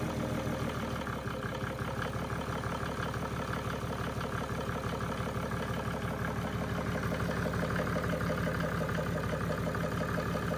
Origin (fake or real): real